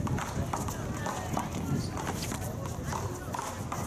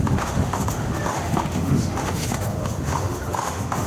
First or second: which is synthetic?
second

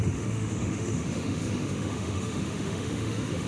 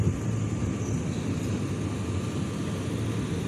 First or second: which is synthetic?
first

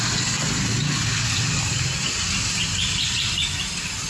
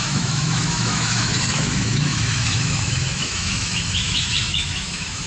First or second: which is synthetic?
second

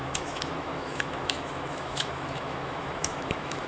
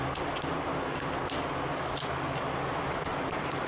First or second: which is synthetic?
first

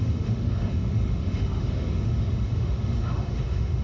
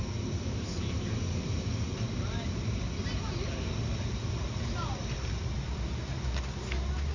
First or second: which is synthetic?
first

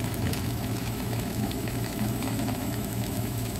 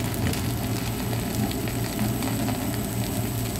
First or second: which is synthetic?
first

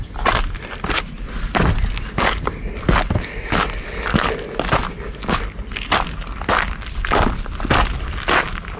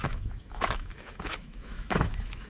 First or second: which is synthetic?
second